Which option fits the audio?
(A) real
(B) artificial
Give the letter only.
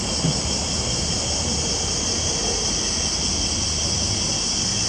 A